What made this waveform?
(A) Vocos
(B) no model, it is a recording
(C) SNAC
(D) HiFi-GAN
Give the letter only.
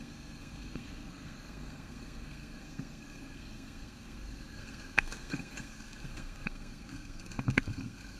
C